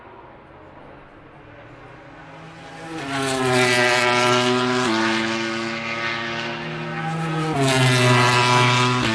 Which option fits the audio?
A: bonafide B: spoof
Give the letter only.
A